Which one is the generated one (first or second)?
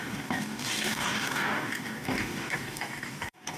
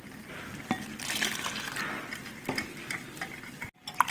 first